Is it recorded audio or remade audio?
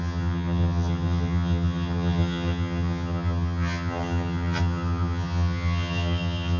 remade